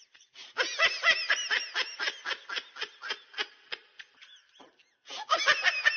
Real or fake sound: real